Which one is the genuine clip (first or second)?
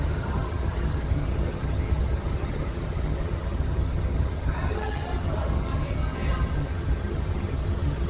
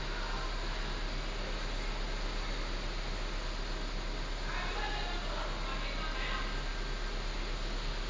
second